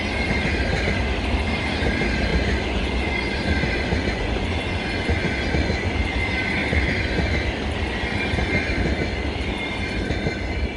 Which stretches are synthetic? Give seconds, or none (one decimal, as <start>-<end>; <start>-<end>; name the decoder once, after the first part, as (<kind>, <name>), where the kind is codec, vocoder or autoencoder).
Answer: 2.3-5.9 (vocoder, Vocos); 6.6-7.5